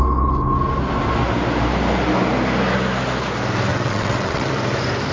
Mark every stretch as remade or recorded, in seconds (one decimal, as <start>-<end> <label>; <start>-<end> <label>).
0.0-3.7 recorded; 3.7-4.5 remade; 4.5-5.1 recorded